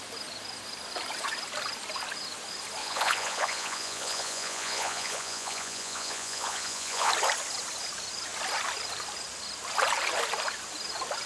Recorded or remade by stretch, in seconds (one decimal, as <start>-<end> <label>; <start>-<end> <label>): 0.0-2.8 recorded; 2.8-7.1 remade; 7.1-11.3 recorded